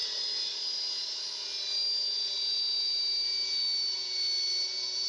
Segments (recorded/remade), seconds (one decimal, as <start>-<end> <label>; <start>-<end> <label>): 0.0-5.1 recorded